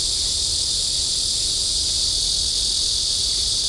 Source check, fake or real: real